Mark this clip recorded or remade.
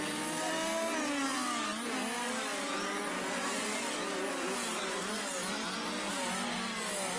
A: recorded